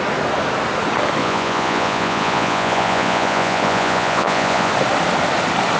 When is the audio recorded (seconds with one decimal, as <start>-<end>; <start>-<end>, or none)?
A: 0.0-1.2; 4.7-5.8